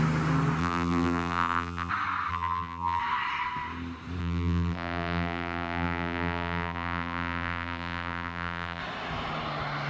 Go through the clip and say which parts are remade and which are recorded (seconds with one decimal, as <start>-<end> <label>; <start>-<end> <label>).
0.0-0.6 recorded; 0.6-1.9 remade; 1.9-2.3 recorded; 2.3-3.0 remade; 3.0-4.2 recorded; 4.2-8.8 remade; 8.8-9.9 recorded